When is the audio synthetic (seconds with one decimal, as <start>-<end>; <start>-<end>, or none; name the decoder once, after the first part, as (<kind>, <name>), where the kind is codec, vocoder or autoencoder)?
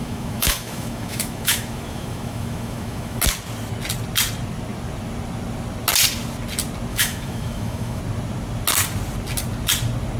0.0-3.2 (autoencoder, DAC-VAE); 6.9-8.0